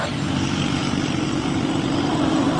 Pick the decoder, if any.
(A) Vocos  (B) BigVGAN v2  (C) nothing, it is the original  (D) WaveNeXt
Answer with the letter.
B